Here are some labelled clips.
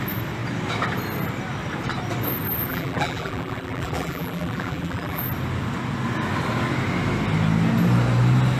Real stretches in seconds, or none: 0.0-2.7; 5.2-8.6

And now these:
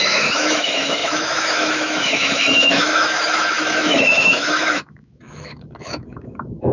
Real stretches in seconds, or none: none

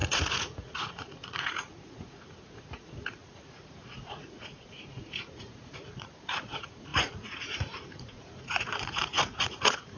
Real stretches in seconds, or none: none

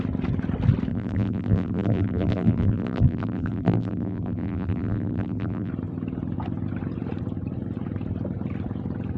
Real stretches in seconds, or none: 0.0-0.9; 5.7-9.2